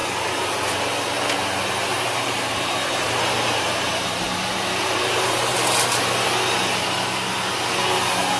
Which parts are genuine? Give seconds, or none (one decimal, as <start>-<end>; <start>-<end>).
0.0-1.7; 5.5-8.4